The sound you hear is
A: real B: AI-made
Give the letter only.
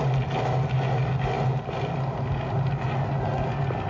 A